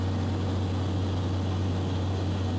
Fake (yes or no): no